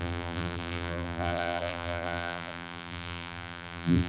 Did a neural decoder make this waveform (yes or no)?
yes